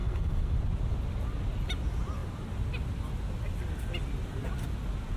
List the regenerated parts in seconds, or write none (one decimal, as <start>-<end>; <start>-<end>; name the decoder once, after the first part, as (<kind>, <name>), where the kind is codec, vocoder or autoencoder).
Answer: 0.0-0.6 (codec, SNAC)